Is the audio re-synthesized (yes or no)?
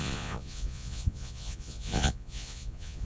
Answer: yes